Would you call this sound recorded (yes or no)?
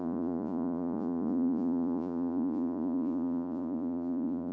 no